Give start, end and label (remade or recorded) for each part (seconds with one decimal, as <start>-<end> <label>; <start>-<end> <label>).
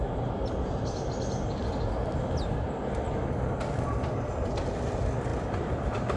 0.0-6.2 recorded